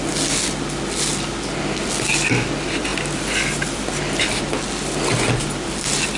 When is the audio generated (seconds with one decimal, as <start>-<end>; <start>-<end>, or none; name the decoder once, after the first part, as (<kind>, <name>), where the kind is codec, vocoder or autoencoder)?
none